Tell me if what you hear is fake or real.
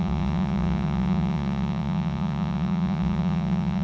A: fake